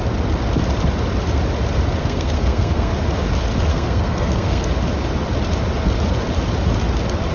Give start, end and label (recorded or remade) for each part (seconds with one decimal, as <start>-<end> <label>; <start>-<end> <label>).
0.0-2.0 recorded; 2.0-2.9 remade; 2.9-3.7 recorded; 3.7-4.7 remade; 4.7-7.3 recorded